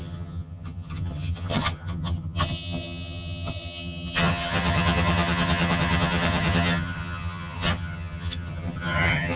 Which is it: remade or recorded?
remade